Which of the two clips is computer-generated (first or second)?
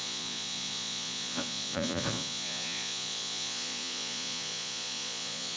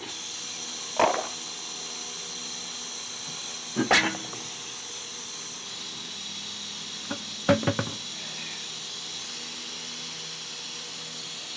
first